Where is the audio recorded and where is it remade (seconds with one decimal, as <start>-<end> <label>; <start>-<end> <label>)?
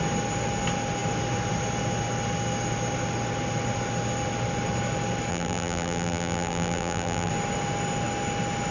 0.0-5.3 recorded; 5.3-7.3 remade; 7.3-8.7 recorded